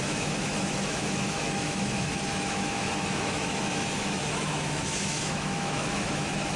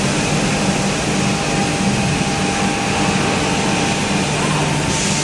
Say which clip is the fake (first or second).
first